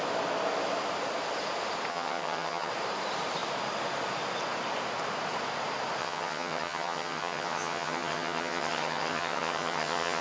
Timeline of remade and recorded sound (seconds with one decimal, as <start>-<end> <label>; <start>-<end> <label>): 0.0-1.9 recorded; 1.9-2.7 remade; 2.7-6.0 recorded; 6.0-10.2 remade